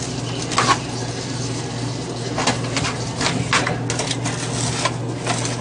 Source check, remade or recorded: recorded